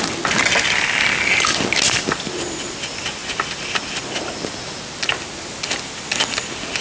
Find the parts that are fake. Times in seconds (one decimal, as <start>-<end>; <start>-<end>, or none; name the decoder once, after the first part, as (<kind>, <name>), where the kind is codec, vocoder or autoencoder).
none